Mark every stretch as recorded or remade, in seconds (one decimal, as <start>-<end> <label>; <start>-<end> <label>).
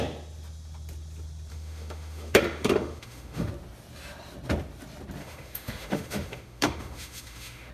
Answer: 0.0-1.5 recorded; 1.5-3.5 remade; 3.5-5.2 recorded; 5.2-7.7 remade